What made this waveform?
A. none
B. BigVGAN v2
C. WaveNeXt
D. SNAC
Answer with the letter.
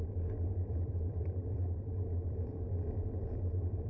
B